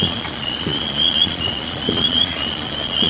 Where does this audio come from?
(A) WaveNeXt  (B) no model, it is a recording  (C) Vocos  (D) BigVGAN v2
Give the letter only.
C